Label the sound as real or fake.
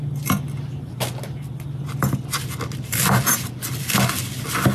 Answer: real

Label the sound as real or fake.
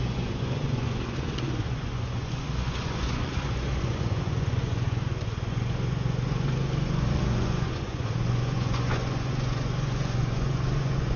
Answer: fake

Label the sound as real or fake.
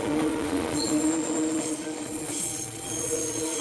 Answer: fake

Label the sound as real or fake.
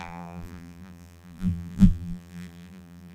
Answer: fake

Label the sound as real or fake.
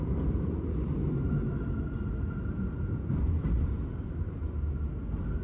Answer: real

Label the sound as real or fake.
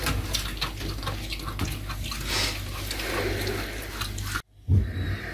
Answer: real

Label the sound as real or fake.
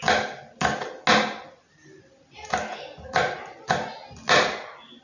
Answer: real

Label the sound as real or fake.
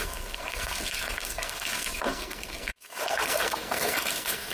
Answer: fake